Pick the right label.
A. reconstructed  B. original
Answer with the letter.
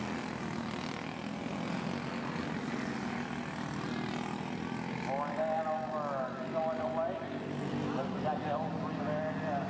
B